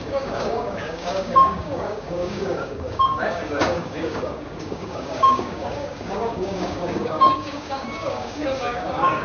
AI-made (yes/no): yes